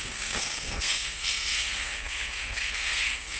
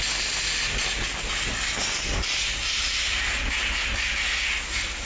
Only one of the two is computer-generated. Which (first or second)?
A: first